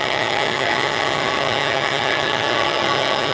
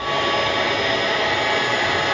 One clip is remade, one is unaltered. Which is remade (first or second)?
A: first